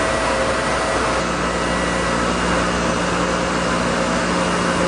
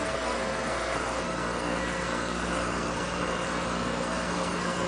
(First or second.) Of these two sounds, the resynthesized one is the second